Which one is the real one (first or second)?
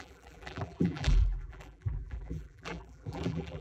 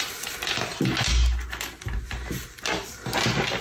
second